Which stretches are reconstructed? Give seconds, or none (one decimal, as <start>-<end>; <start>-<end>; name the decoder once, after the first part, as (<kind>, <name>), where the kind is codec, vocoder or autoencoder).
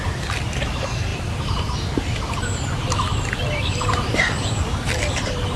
0.0-1.1 (vocoder, BigVGAN v2); 4.2-5.6